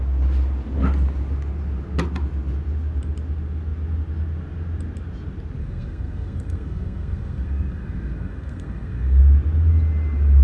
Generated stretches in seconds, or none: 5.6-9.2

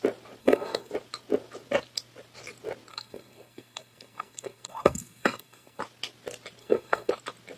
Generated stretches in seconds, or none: 0.4-0.9; 2.9-5.8; 6.6-7.1

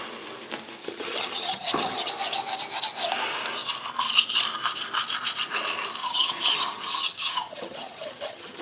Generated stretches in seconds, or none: 0.8-2.1; 6.0-8.6

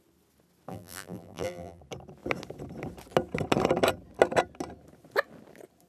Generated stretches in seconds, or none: 0.7-1.8